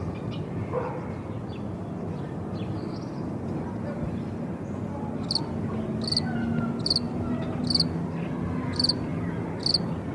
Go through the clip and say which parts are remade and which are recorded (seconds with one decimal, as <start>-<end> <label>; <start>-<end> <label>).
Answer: 0.0-10.1 recorded